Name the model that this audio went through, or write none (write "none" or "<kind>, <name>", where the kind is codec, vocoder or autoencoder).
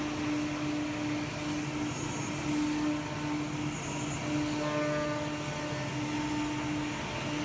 none